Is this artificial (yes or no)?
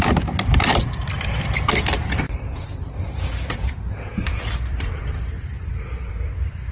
yes